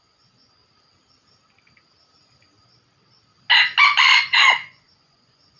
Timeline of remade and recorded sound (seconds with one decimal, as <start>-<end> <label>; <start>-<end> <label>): 0.0-0.6 remade; 0.6-3.8 recorded; 3.8-5.6 remade